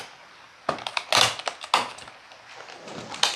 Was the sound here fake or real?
real